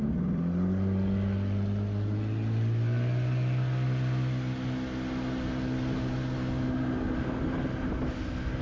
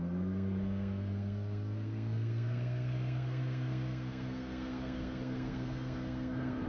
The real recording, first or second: first